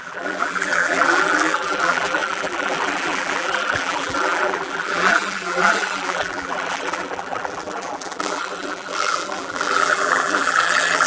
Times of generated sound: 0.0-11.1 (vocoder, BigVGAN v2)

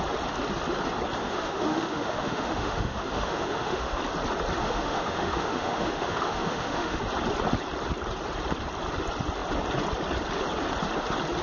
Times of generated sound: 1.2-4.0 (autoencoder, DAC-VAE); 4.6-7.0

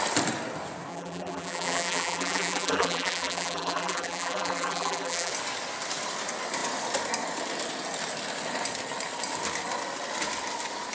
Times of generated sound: 0.9-5.3 (vocoder, BigVGAN v2)

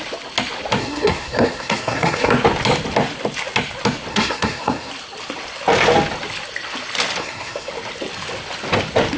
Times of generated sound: 0.8-2.3 (codec, SNAC); 4.1-4.9; 7.2-7.7

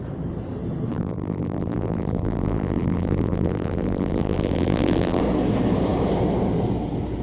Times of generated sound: 0.9-5.2 (vocoder, BigVGAN v2)

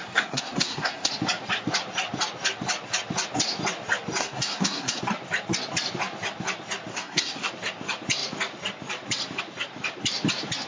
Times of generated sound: 0.0-1.1 (codec, SNAC); 4.2-5.0; 6.9-7.5